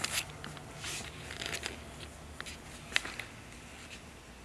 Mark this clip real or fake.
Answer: real